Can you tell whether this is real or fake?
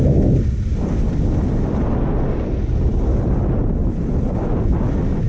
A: real